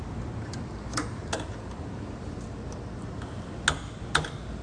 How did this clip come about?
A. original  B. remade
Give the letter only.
A